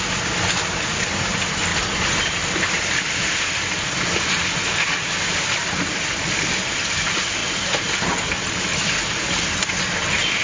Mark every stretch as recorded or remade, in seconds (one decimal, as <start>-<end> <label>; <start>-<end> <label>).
0.0-10.4 recorded